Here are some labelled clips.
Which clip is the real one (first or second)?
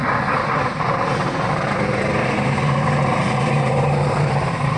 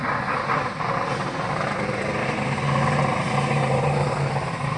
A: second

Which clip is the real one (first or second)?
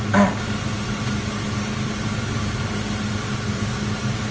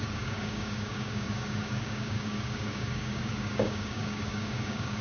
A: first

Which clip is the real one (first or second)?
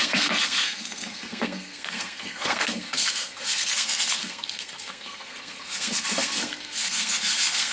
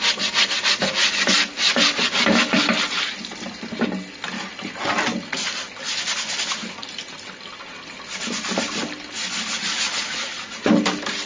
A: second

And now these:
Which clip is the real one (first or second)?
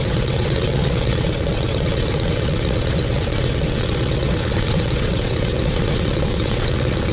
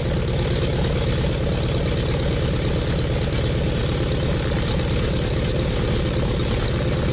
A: second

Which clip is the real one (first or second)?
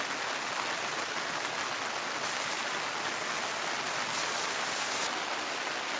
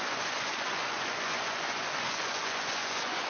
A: first